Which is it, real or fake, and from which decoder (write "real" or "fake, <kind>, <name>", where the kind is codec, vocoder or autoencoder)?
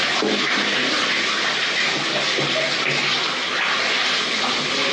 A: real